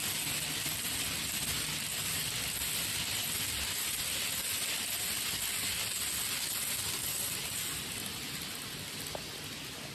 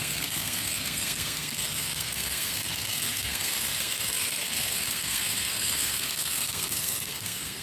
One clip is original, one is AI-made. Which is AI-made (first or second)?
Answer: second